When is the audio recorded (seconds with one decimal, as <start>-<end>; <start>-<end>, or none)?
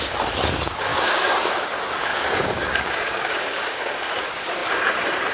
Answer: 0.0-0.9; 1.5-2.1; 4.1-5.3